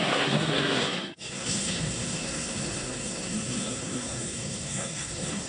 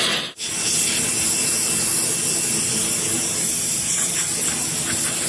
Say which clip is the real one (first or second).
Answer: second